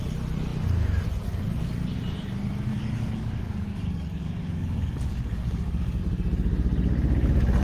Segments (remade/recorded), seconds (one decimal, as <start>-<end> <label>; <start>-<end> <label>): 0.0-2.7 recorded; 2.7-6.0 remade; 6.0-7.6 recorded